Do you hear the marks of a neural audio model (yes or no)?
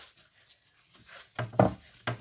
no